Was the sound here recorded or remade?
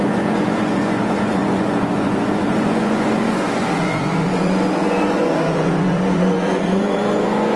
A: remade